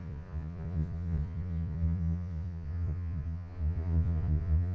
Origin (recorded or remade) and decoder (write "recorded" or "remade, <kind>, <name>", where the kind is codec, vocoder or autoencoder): remade, vocoder, Vocos